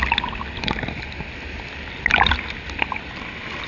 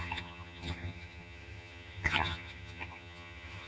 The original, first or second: first